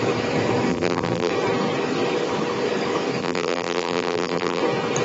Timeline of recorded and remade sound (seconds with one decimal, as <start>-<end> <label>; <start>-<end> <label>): 0.0-0.7 recorded; 0.7-1.3 remade; 1.3-3.2 recorded; 3.2-4.6 remade; 4.6-5.0 recorded